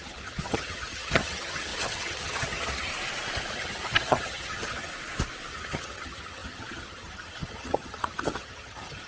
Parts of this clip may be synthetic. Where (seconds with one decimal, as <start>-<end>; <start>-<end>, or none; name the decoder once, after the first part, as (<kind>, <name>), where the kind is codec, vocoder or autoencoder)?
0.0-2.9 (vocoder, HiFi-GAN); 3.5-4.9; 5.5-9.1